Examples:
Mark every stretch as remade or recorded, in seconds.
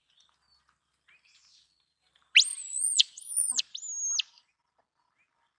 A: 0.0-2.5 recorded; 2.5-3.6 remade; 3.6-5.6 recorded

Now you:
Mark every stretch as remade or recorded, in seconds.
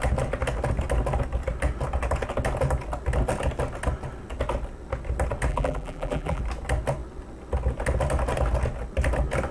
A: 0.0-5.5 recorded; 5.5-6.4 remade; 6.4-9.5 recorded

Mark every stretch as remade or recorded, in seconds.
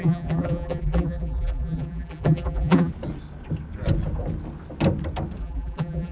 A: 0.0-2.9 remade; 2.9-5.4 recorded; 5.4-6.1 remade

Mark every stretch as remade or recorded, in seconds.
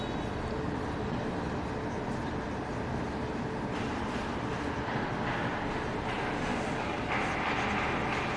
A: 0.0-6.5 recorded; 6.5-7.1 remade; 7.1-8.4 recorded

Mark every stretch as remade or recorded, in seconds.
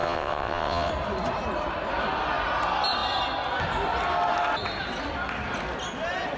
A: 0.0-0.9 remade; 0.9-6.4 recorded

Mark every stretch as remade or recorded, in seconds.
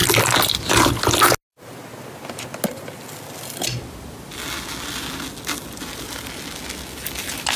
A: 0.0-7.6 recorded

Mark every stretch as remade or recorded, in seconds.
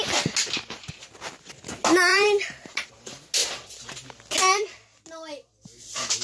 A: 0.0-2.1 recorded; 2.1-2.9 remade; 2.9-6.2 recorded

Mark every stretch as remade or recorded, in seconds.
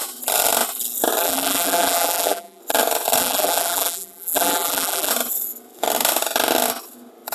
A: 0.0-1.2 recorded; 1.2-2.6 remade; 2.6-3.2 recorded; 3.2-5.1 remade; 5.1-7.3 recorded